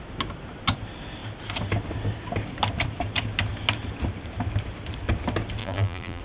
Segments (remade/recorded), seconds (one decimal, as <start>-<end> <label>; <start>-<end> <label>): 0.0-5.6 recorded; 5.6-6.2 remade